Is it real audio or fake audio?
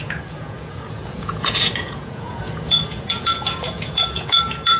fake